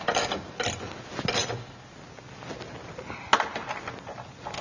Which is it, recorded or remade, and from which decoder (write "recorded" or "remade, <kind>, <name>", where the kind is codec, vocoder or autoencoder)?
recorded